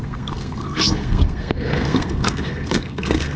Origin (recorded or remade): remade